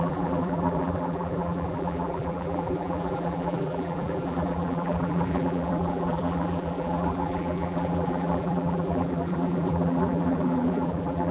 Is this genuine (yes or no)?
no